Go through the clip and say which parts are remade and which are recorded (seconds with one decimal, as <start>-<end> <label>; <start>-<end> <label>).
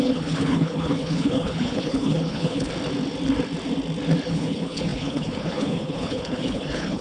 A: 0.0-2.7 remade; 2.7-4.3 recorded; 4.3-7.0 remade